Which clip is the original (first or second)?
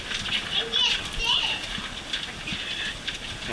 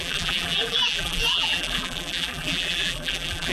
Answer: first